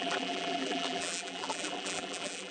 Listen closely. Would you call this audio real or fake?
fake